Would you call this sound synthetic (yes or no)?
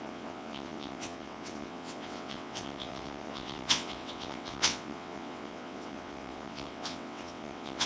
yes